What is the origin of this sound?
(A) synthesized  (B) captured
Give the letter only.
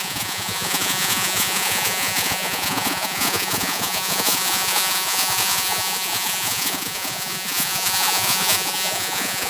A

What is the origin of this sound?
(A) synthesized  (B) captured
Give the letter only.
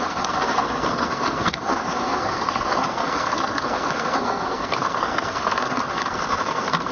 A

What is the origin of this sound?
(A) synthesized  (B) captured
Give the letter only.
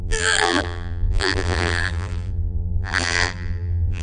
A